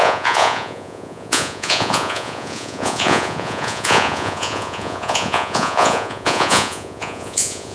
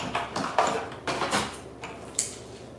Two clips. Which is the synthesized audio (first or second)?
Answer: first